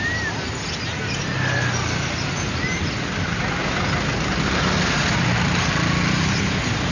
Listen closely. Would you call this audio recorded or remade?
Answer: recorded